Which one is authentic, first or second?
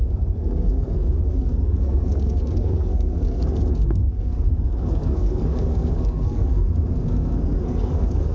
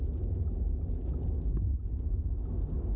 second